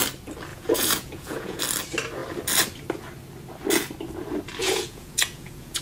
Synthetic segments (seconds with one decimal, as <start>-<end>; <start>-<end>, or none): 0.5-1.6; 4.6-5.8